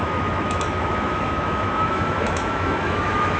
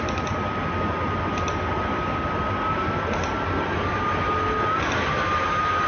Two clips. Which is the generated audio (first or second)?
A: first